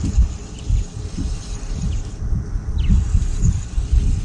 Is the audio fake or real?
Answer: real